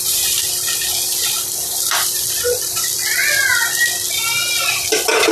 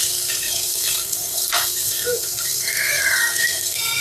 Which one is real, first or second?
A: first